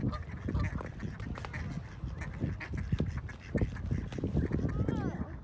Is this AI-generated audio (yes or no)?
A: no